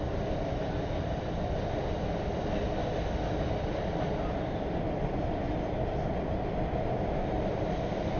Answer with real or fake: real